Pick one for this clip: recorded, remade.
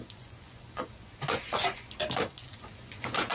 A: remade